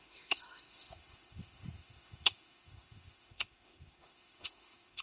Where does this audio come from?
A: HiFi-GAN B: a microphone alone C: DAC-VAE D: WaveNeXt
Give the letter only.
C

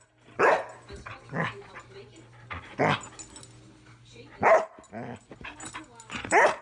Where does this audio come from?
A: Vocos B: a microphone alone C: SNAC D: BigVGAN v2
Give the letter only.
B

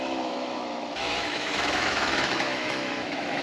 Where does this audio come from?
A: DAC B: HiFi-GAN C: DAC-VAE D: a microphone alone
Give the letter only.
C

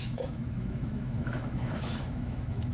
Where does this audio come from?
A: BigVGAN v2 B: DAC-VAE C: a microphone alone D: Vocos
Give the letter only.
B